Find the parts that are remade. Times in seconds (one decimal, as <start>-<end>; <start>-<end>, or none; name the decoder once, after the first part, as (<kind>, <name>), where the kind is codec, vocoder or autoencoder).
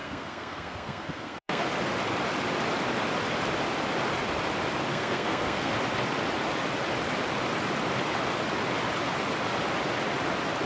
0.0-1.6 (codec, SNAC); 4.9-5.7